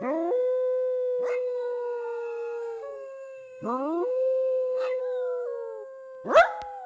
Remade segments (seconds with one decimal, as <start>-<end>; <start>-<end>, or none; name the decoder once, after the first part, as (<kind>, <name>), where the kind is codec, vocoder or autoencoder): 1.3-5.0 (codec, SNAC)